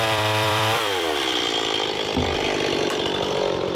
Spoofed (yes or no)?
yes